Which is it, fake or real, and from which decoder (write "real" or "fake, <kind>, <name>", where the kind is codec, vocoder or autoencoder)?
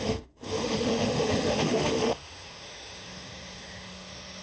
fake, autoencoder, DAC-VAE